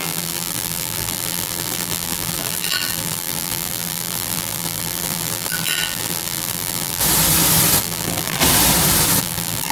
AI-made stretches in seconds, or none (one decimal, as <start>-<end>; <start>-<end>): 0.0-7.0; 7.8-8.4; 9.2-9.7